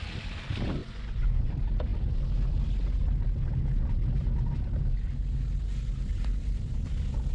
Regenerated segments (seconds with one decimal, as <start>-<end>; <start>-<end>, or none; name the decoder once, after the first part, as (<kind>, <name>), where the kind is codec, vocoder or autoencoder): 0.8-1.5 (vocoder, Vocos)